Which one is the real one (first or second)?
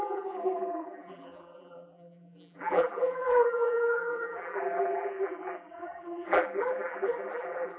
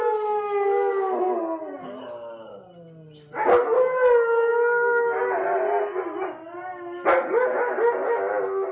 second